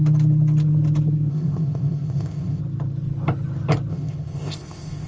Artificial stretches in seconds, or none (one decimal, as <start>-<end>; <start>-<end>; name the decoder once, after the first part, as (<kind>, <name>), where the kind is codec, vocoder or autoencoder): 1.3-2.6 (codec, ZipCodec); 3.9-5.1